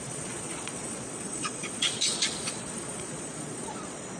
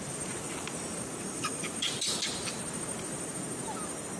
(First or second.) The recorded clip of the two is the second